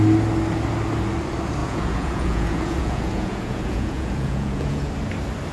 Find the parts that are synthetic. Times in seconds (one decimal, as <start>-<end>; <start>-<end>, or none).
1.6-4.9